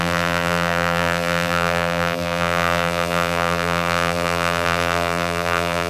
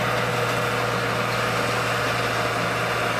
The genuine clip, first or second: second